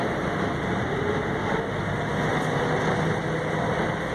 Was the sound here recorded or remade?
recorded